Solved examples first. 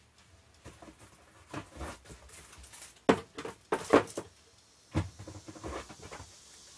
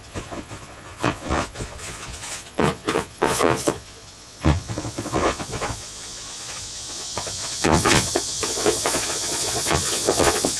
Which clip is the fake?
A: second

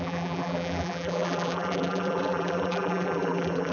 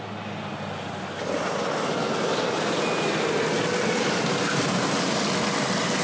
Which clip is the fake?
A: first